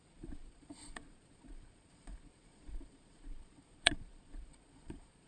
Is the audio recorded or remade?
remade